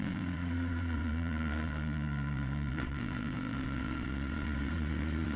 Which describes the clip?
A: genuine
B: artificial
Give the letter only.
B